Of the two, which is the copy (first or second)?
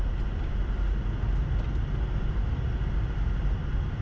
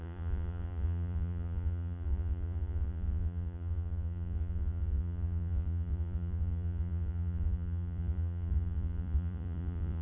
second